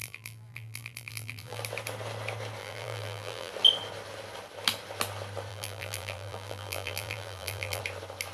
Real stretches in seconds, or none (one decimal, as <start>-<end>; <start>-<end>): 1.6-2.6; 3.5-5.5; 7.8-8.3